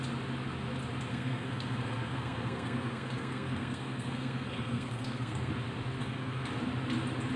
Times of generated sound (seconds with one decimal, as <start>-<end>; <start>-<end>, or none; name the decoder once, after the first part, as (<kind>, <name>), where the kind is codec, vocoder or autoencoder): 1.1-5.5 (codec, SNAC); 6.0-6.5